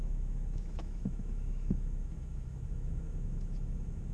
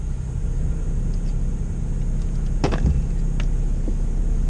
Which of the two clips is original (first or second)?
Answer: second